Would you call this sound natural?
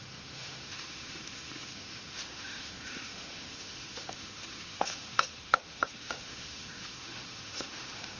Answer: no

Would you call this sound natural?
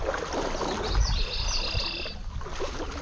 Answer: yes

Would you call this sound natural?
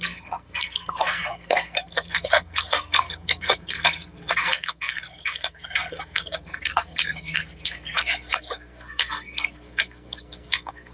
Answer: no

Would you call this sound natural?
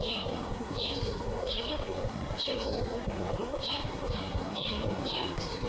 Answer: no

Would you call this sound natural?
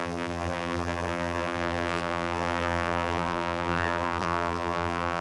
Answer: no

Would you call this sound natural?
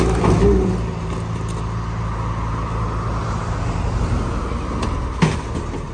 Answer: yes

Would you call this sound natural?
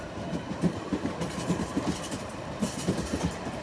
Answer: yes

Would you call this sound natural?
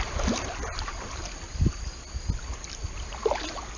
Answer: yes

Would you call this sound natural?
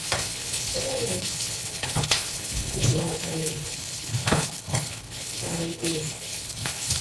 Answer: no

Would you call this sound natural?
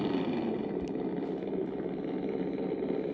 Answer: yes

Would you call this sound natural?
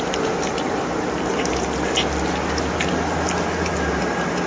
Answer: yes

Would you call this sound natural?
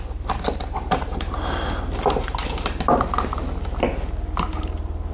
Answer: yes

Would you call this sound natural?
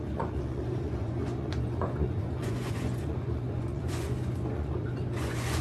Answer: no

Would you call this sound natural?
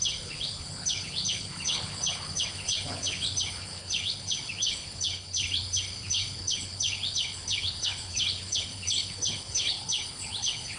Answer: no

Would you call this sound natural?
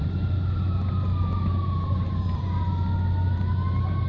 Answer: yes